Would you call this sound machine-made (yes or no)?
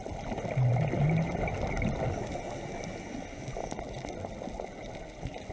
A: no